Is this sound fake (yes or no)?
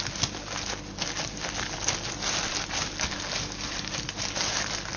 no